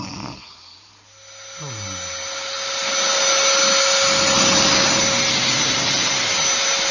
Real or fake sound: real